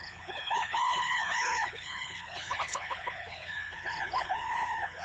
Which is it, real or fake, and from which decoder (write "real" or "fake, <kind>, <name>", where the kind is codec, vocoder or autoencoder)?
fake, codec, HILCodec